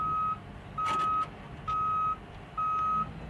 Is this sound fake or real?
real